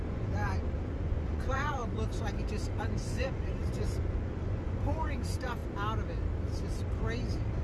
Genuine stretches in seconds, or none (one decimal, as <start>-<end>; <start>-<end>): 1.8-2.8; 5.6-7.6